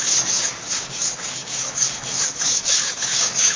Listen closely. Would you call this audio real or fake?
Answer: fake